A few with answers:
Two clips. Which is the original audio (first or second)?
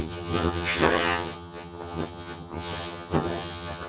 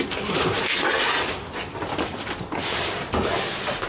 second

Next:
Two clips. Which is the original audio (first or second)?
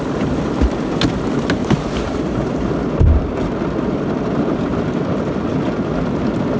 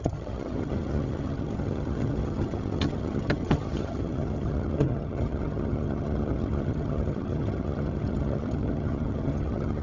first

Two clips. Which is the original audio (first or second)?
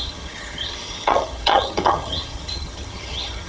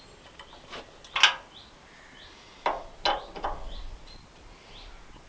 second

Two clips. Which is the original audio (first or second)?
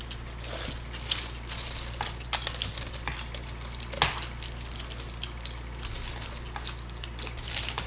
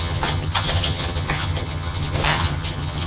first